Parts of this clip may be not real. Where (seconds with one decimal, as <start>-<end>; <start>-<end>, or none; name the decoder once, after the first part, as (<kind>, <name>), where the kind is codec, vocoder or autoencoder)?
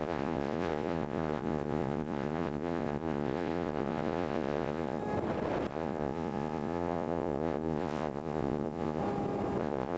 0.0-5.0 (vocoder, Vocos); 5.7-9.0; 9.6-10.0